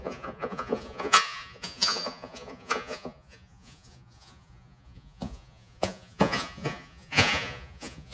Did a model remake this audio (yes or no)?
yes